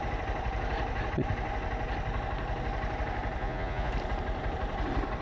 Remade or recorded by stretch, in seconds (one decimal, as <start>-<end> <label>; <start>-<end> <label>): 0.0-3.4 recorded; 3.4-3.9 remade; 3.9-5.2 recorded